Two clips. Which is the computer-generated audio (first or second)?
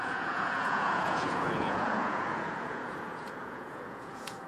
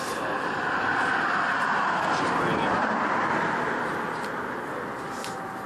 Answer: first